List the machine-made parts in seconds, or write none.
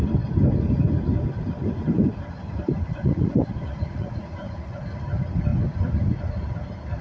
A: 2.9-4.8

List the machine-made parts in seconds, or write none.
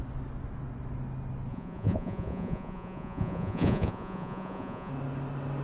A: 1.5-4.9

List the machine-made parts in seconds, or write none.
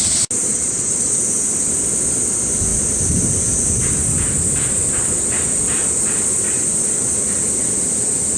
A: 0.5-1.2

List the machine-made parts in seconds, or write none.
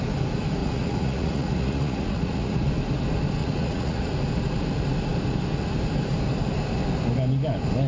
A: 0.6-2.7; 3.4-4.1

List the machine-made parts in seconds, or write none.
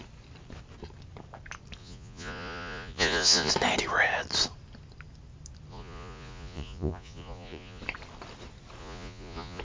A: 1.8-3.5; 5.7-7.8; 8.8-9.6